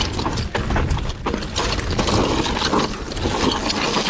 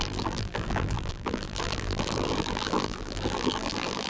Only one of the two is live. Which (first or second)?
first